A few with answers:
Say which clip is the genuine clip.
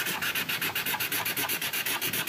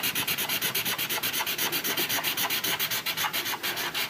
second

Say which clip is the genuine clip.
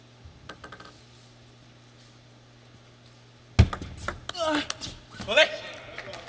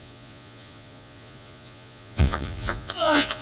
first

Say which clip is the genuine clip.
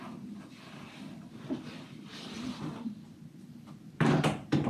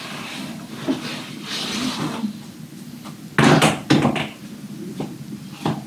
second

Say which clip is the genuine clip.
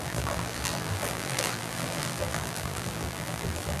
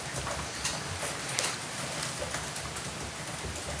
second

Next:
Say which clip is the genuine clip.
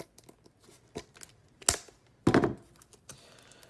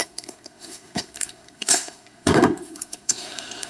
first